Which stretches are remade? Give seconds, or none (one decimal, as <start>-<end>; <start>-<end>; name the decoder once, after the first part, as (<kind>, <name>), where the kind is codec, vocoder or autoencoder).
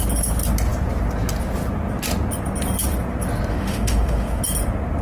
3.5-4.4 (autoencoder, DAC-VAE)